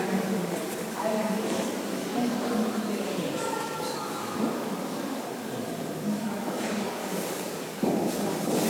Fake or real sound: fake